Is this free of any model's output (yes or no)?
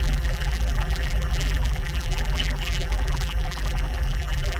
no